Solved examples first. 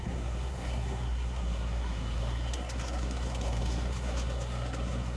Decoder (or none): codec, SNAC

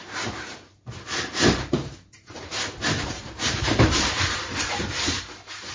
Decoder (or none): vocoder, BigVGAN v2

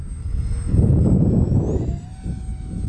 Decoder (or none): none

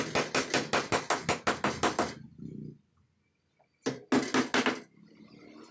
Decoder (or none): none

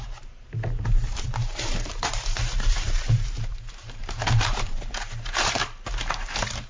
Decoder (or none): vocoder, BigVGAN v2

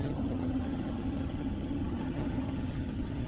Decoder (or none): vocoder, HiFi-GAN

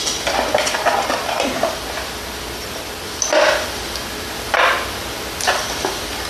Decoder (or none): none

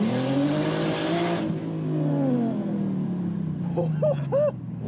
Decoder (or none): none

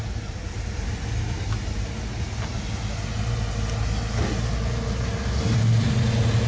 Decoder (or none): none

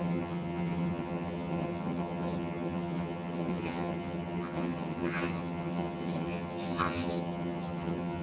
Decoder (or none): vocoder, HiFi-GAN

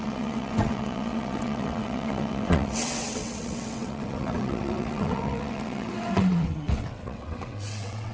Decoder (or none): vocoder, WaveNeXt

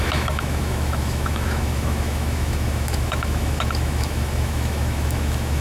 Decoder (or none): autoencoder, DAC-VAE